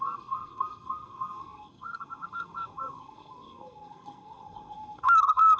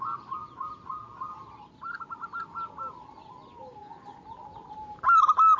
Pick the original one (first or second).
second